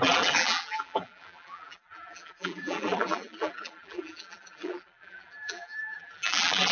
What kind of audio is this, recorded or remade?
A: remade